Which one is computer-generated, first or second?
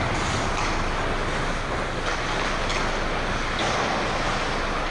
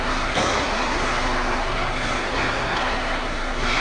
second